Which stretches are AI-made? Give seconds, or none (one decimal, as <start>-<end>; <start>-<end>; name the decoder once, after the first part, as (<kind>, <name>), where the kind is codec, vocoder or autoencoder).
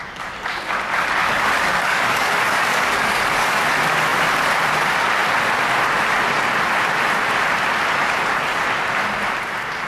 1.2-3.6 (codec, DAC)